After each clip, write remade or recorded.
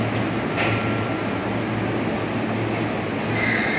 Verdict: recorded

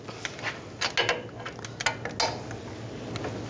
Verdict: recorded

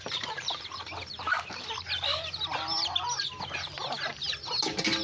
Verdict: recorded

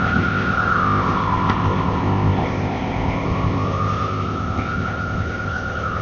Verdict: remade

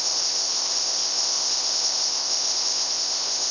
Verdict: remade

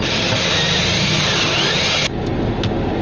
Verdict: recorded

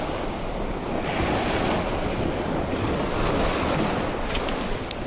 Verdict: recorded